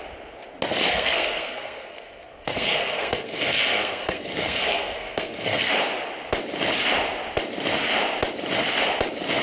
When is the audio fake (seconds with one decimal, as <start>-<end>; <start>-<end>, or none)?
0.9-5.7